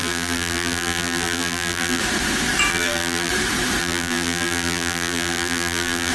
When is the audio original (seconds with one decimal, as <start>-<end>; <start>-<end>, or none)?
2.0-2.7; 3.3-3.8